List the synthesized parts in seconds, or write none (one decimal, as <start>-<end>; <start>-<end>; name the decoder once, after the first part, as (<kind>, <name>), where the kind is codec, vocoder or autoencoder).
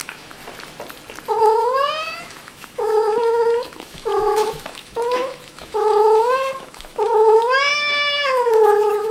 0.0-0.4 (autoencoder, DAC-VAE); 1.3-9.1